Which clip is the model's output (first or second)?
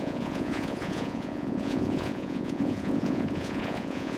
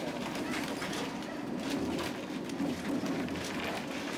first